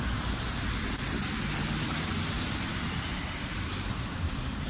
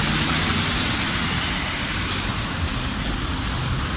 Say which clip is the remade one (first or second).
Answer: first